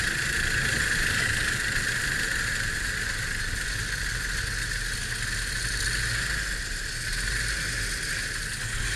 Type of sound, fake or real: real